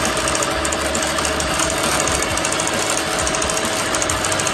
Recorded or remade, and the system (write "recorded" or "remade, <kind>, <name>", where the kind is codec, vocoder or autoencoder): recorded